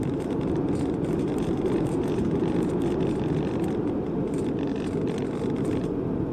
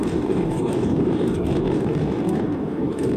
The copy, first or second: second